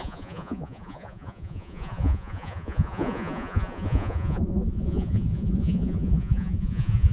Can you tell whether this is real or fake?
fake